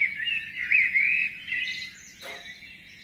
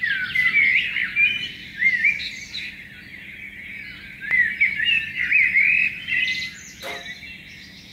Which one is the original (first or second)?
second